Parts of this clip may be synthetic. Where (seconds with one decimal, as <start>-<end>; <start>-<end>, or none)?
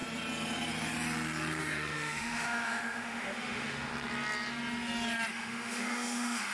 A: 1.6-3.9; 5.3-6.5